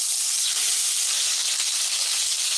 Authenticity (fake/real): fake